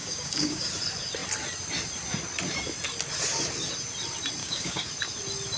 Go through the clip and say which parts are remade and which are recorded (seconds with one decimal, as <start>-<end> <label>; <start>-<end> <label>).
0.0-0.7 remade; 0.7-4.4 recorded; 4.4-4.9 remade; 4.9-5.6 recorded